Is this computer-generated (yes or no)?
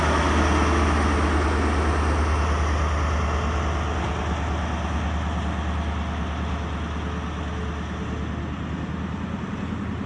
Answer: no